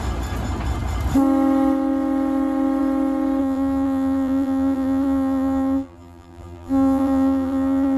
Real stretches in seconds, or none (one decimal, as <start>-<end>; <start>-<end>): 0.0-3.4